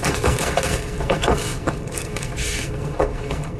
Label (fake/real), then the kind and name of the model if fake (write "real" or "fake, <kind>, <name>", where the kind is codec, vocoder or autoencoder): fake, codec, SNAC